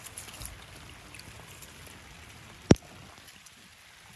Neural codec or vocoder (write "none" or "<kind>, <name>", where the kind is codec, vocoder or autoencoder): none